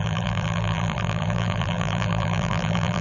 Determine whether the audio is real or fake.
fake